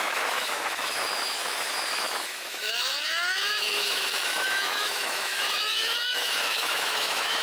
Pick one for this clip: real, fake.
fake